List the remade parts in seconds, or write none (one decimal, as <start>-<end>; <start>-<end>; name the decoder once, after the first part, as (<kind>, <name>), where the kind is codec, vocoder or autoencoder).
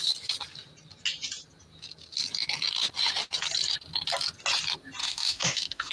5.0-5.9 (autoencoder, DAC-VAE)